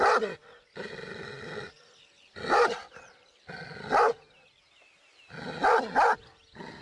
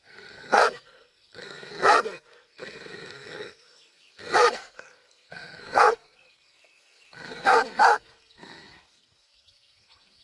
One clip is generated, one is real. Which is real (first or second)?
first